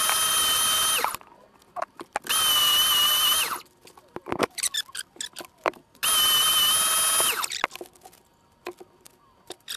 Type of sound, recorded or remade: recorded